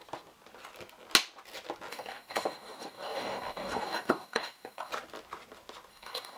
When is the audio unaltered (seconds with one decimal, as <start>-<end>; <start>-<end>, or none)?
0.0-1.9; 4.9-5.9